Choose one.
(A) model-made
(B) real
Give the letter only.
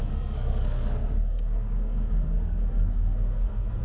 A